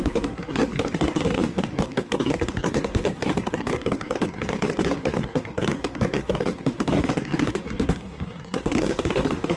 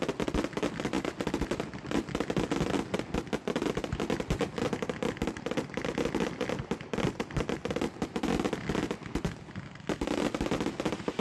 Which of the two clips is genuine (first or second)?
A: second